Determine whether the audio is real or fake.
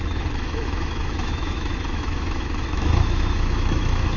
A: fake